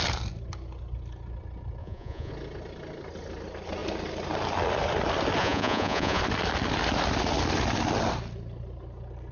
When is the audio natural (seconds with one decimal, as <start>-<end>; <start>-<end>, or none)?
0.0-1.8; 2.3-5.4; 6.2-9.3